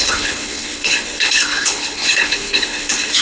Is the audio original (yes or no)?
no